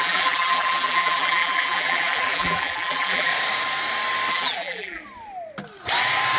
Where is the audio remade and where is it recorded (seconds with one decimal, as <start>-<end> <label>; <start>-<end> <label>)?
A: 0.0-3.3 remade; 3.3-4.3 recorded; 4.3-5.0 remade; 5.0-6.4 recorded